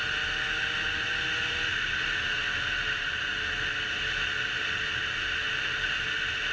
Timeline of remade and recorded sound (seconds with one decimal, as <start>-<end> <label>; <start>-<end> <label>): 0.0-6.5 recorded

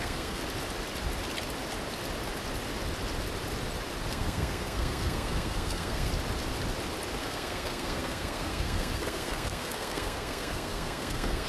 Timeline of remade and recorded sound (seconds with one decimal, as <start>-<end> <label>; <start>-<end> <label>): 0.0-0.4 remade; 0.4-4.1 recorded; 4.1-6.1 remade; 6.1-7.2 recorded; 7.2-11.5 remade